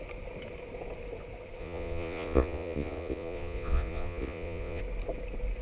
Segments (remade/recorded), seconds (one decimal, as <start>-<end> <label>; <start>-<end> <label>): 0.0-1.6 recorded; 1.6-4.8 remade; 4.8-5.6 recorded